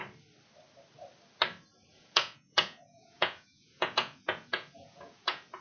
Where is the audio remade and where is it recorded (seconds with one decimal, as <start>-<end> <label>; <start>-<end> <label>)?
0.0-1.9 recorded; 1.9-5.6 remade